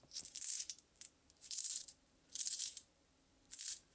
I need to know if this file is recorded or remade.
remade